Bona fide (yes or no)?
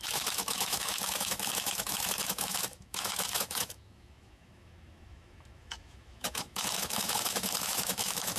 no